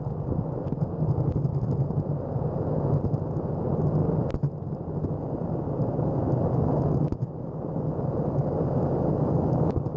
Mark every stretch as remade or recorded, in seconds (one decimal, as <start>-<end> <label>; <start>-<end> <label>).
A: 0.0-10.0 recorded